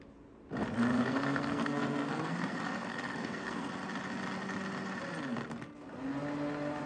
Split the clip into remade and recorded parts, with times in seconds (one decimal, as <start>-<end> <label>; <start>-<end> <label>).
0.0-0.9 recorded; 0.9-3.7 remade; 3.7-6.9 recorded